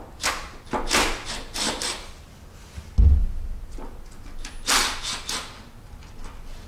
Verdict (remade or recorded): recorded